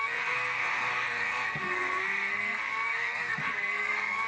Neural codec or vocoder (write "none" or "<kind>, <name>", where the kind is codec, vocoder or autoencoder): codec, SNAC